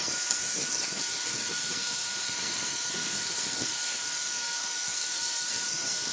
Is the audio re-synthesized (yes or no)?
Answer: yes